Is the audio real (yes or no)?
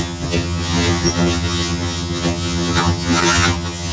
no